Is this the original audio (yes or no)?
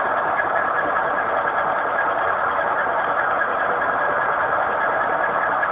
yes